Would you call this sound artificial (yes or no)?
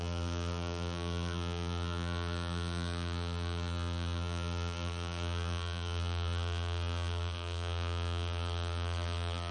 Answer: yes